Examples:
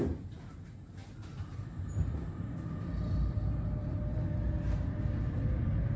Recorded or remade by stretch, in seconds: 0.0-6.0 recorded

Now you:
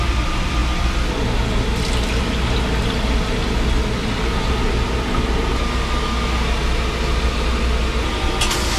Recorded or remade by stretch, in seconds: 0.0-8.8 recorded

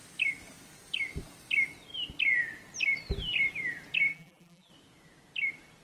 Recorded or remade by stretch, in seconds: 0.0-4.1 recorded; 4.1-4.7 remade; 4.7-5.8 recorded